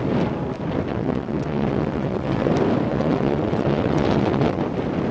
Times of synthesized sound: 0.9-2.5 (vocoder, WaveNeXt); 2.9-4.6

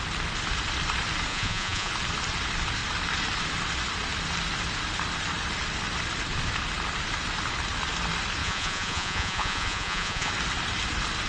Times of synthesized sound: 1.3-1.9 (vocoder, Vocos); 8.4-10.3

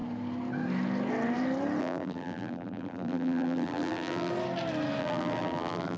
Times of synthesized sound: 1.8-4.3 (vocoder, BigVGAN v2); 5.0-6.0

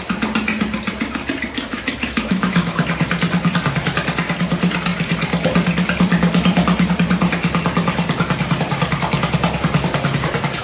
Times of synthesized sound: 1.7-2.9 (autoencoder, DAC-VAE)

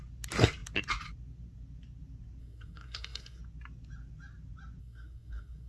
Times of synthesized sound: 2.4-3.4 (codec, SNAC); 4.8-5.7

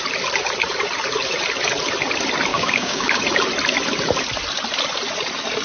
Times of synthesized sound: 2.5-3.2 (codec, DAC)

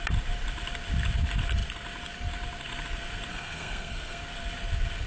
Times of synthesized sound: 3.3-4.2 (codec, SNAC)

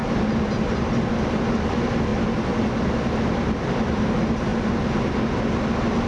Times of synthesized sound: none